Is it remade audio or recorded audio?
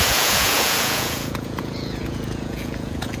remade